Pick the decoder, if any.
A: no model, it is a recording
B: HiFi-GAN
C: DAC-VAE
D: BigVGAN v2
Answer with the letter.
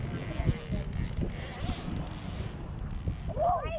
A